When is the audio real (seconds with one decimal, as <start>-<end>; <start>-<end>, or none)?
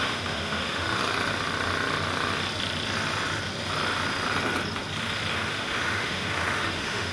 1.0-5.3